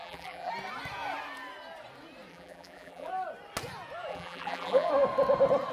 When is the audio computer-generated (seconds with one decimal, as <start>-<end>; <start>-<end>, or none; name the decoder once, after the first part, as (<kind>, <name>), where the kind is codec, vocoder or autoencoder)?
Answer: 0.0-0.5 (vocoder, BigVGAN v2); 2.3-3.1; 4.1-4.9